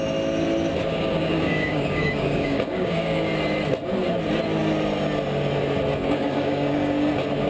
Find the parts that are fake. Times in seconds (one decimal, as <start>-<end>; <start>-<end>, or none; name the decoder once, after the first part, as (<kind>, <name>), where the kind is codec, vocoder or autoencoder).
0.9-3.3 (codec, DAC); 5.9-7.1